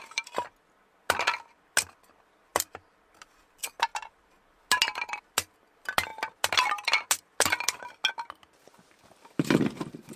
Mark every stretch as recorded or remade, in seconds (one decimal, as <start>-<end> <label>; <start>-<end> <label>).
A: 0.0-10.2 recorded